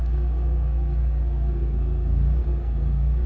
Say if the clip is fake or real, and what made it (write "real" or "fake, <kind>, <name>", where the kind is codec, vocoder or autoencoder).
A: fake, codec, SNAC